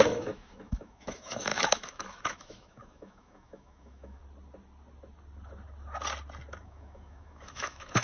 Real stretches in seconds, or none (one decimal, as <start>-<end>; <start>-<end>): 4.2-6.6